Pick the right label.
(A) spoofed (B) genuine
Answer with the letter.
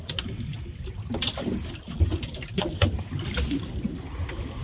B